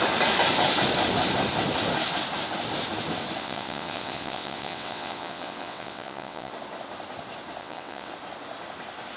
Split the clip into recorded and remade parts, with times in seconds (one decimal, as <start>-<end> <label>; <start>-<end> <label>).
0.0-3.4 recorded; 3.4-6.5 remade; 6.5-7.6 recorded; 7.6-8.1 remade; 8.1-9.2 recorded

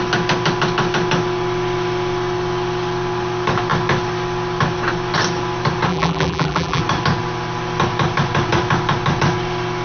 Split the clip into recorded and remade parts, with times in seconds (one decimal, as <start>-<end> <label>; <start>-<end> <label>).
0.0-5.9 recorded; 5.9-6.8 remade; 6.8-9.8 recorded